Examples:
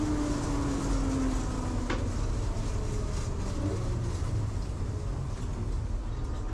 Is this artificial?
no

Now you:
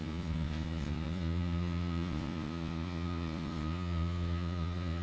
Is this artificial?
yes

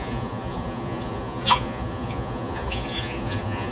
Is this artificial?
yes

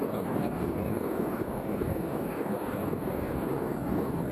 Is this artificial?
yes